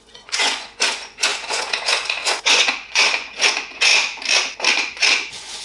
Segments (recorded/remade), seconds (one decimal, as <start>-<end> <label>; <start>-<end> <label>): 0.0-3.9 remade; 3.9-4.7 recorded; 4.7-5.6 remade